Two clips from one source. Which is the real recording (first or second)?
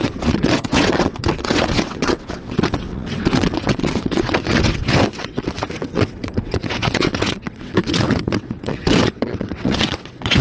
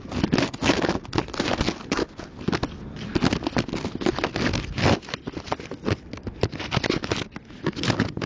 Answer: second